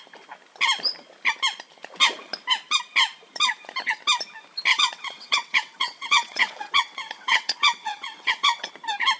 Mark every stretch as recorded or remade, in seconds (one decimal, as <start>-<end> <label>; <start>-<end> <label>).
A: 0.0-4.7 recorded; 4.7-8.7 remade; 8.7-9.2 recorded